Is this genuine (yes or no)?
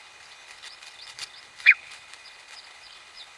no